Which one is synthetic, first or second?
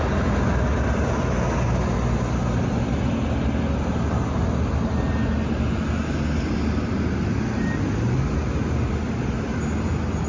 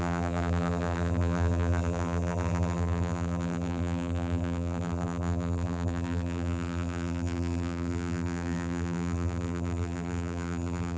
second